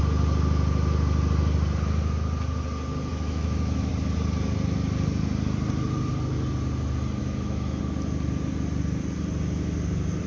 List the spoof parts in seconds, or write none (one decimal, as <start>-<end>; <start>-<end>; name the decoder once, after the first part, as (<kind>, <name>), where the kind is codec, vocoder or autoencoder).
3.1-3.9 (autoencoder, DAC-VAE); 7.2-7.8